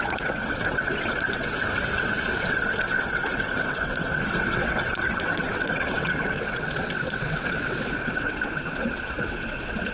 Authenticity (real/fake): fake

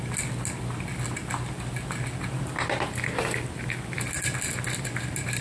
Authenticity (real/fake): real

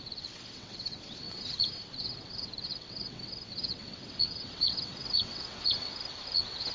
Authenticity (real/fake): fake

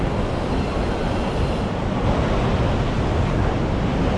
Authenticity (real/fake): real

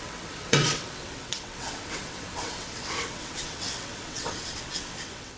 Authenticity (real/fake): fake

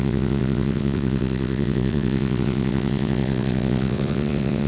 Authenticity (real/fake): fake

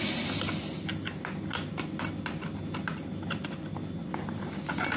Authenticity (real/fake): real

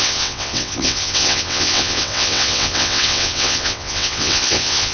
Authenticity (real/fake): fake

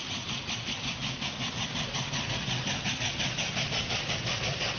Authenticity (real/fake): real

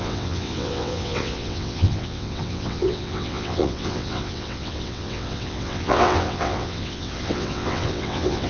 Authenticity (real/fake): fake